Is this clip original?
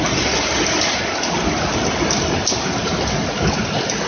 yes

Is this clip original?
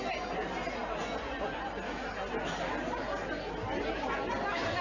yes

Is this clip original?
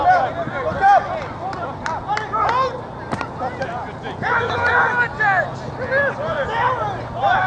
yes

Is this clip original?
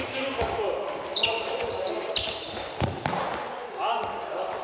yes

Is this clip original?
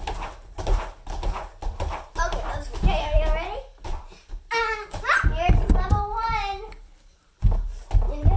yes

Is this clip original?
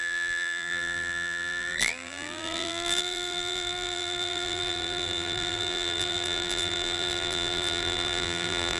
no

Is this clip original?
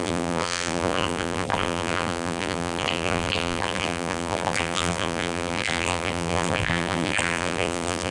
no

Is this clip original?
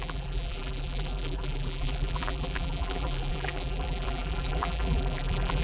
no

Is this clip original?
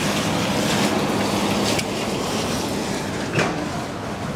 yes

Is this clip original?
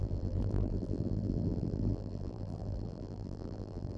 no